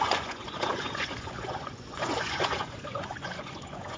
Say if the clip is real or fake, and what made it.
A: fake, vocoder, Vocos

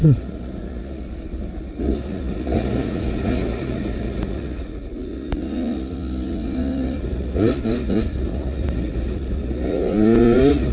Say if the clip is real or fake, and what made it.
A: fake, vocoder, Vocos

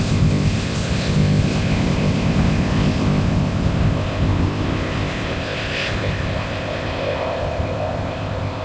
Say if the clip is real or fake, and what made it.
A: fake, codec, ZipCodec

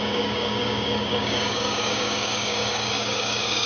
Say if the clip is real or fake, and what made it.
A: fake, codec, DAC